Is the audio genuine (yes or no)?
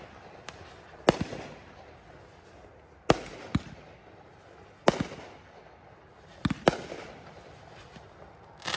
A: yes